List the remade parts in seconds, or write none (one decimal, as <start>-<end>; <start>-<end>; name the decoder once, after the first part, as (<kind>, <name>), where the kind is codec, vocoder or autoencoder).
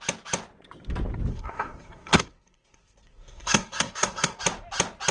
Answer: 1.3-4.4 (codec, SNAC)